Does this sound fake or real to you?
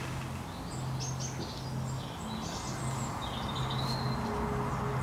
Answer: real